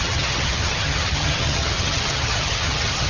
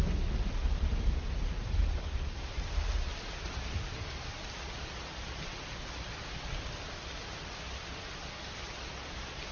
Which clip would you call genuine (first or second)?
second